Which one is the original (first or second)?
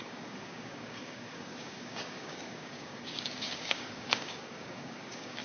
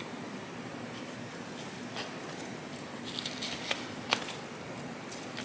second